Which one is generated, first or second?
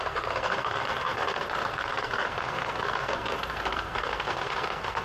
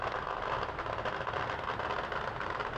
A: first